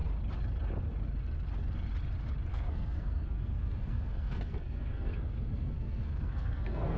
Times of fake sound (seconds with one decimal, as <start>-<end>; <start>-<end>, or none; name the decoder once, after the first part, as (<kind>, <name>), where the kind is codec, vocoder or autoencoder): 2.5-7.0 (codec, SNAC)

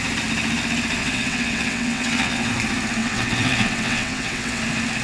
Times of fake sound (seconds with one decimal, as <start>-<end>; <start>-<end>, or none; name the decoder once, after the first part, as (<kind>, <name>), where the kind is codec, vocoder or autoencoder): 1.0-2.5 (vocoder, WaveNeXt); 3.0-4.6

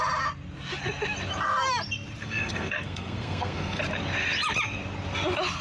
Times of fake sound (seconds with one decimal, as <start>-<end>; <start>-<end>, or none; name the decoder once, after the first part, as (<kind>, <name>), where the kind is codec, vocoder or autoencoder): 2.2-3.8 (codec, SNAC)

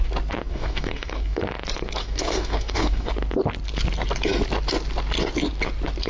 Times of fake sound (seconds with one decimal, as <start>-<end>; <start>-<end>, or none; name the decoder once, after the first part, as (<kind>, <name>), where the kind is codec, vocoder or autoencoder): 0.5-1.4 (codec, DAC); 2.0-3.1